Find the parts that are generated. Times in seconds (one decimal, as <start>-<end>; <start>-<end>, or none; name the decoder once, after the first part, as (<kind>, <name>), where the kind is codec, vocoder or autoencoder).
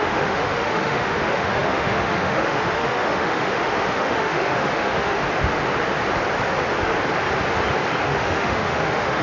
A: 0.0-5.2 (autoencoder, DAC-VAE); 8.0-9.2